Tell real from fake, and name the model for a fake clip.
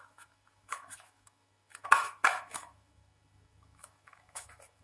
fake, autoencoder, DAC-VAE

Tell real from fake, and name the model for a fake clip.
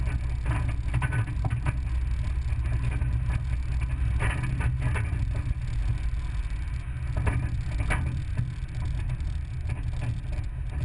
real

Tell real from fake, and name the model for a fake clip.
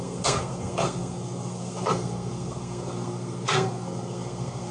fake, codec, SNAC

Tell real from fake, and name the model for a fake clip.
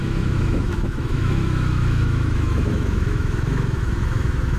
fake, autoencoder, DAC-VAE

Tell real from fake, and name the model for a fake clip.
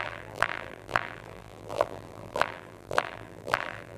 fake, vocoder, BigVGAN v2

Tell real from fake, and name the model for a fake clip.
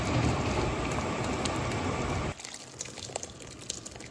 fake, vocoder, BigVGAN v2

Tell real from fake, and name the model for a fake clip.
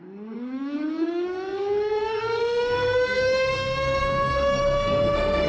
fake, codec, SNAC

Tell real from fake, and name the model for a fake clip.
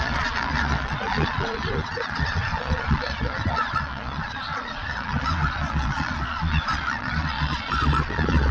fake, vocoder, Vocos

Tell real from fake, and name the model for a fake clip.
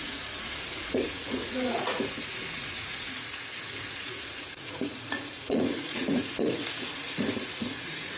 fake, vocoder, Vocos